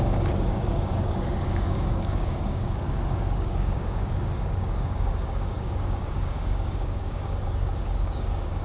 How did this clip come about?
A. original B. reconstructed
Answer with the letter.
B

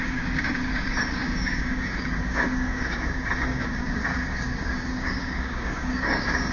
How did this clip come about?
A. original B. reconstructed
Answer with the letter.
B